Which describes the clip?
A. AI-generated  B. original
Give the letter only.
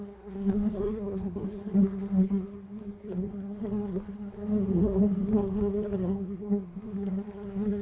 A